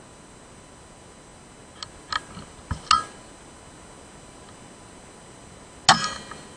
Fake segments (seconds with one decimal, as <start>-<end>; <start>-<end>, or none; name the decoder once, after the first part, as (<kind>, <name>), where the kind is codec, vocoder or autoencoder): none